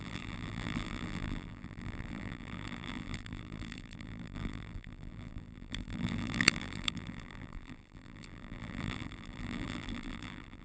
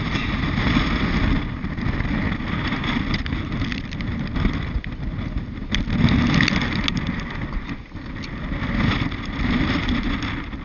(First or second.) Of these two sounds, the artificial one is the first